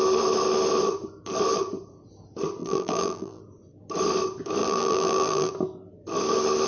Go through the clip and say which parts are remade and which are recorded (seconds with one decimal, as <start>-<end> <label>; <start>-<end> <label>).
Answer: 0.0-2.6 recorded; 2.6-3.4 remade; 3.4-4.6 recorded; 4.6-5.5 remade; 5.5-6.7 recorded